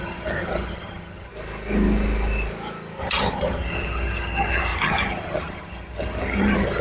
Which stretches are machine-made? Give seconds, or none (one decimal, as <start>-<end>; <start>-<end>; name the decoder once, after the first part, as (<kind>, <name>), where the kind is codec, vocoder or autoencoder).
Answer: 0.0-1.3 (vocoder, HiFi-GAN); 3.0-6.8